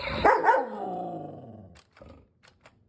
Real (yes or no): yes